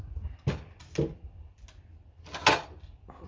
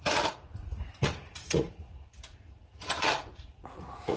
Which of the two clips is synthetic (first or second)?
second